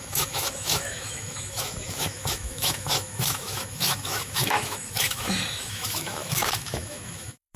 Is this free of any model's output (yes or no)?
no